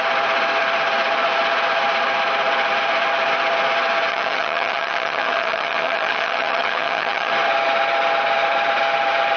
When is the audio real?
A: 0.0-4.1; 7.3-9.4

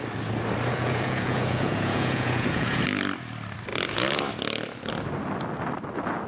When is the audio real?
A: 0.0-0.7; 2.8-6.3